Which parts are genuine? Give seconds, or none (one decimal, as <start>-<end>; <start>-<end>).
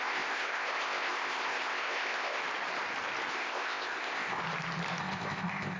2.4-3.3; 4.4-5.0